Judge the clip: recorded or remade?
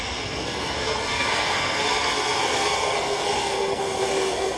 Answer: remade